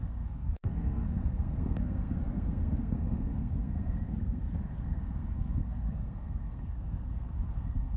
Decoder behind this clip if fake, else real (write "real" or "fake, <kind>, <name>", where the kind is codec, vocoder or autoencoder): fake, codec, SNAC